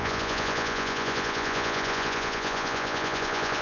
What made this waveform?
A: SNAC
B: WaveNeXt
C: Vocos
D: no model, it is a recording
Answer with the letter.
C